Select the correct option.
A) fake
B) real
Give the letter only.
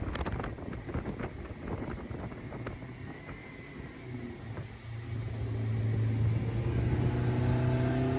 B